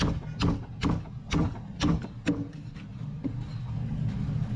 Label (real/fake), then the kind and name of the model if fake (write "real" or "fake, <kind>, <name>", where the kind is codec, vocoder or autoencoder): real